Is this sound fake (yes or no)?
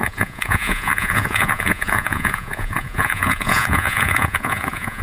yes